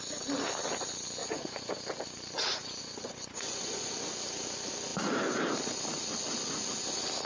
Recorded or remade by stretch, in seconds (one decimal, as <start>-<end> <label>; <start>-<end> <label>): 0.0-1.2 recorded; 1.2-1.7 remade; 1.7-2.5 recorded; 2.5-3.9 remade; 3.9-7.3 recorded